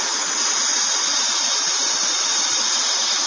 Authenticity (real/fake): fake